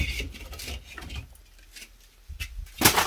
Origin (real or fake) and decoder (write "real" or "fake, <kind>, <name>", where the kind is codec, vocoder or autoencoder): real